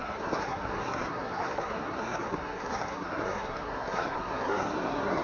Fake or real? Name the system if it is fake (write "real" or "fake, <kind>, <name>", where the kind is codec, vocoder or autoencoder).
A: fake, codec, SNAC